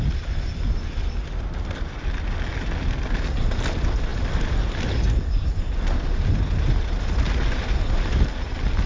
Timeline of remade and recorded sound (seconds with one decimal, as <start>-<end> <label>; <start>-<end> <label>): 0.0-8.9 recorded